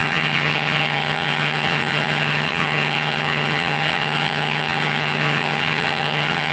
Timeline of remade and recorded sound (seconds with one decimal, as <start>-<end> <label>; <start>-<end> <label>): 0.0-6.5 remade